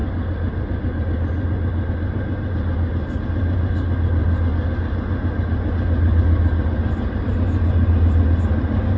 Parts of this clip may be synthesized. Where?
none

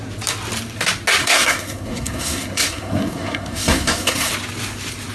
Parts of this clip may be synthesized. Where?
1.2-4.3

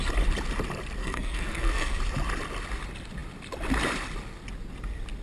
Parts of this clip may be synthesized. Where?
1.0-2.0

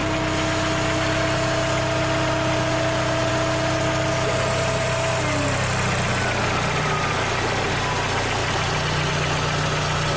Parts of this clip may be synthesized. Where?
none

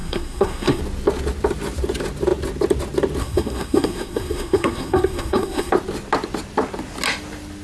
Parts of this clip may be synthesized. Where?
0.0-0.8; 3.2-5.7

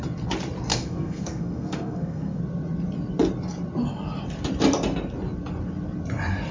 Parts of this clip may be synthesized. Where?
0.7-2.4

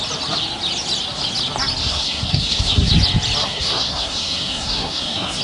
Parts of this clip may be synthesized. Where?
1.8-2.9; 3.4-5.4

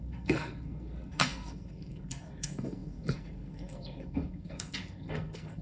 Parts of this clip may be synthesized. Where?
0.0-5.6